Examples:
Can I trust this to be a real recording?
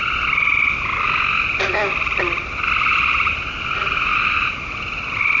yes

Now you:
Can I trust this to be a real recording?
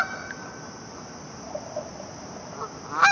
yes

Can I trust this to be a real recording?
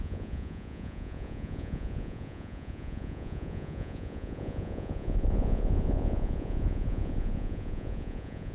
no